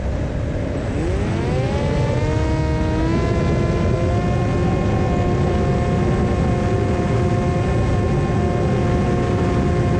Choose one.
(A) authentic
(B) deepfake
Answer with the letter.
A